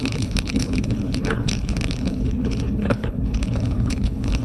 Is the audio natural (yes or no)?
no